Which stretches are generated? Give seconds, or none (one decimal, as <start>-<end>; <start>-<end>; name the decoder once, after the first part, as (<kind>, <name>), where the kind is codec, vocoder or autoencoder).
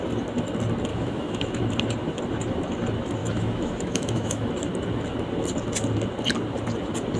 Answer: 0.9-1.6 (autoencoder, DAC-VAE); 3.2-4.5